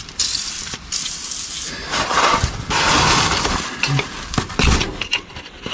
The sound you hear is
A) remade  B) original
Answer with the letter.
B